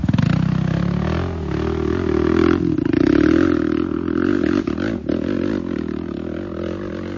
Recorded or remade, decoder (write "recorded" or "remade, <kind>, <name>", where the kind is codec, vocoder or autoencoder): recorded